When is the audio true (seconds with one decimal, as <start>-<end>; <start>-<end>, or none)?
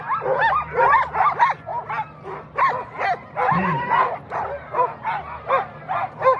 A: 0.0-6.4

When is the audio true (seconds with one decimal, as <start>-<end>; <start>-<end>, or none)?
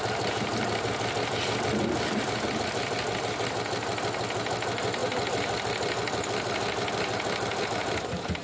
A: 0.0-8.4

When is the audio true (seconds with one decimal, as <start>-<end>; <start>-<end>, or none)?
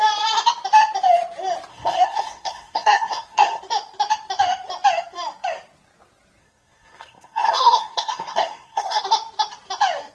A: 0.0-1.7; 3.6-6.4; 9.0-10.1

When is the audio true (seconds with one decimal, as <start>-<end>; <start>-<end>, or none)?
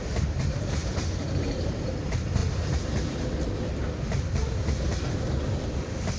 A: 2.4-6.2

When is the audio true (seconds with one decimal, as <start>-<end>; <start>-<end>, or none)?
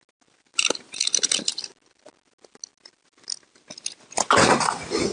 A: 0.0-5.1